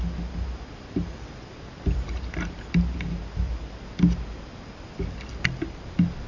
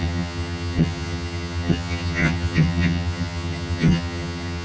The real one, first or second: first